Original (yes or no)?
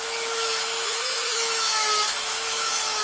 no